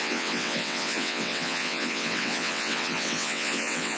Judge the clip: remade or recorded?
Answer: remade